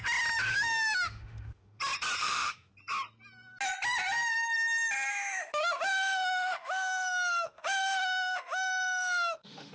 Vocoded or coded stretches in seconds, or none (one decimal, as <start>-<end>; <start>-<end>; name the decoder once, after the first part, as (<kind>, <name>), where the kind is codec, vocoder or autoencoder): 0.5-1.8 (autoencoder, DAC-VAE); 2.2-2.7; 5.1-9.7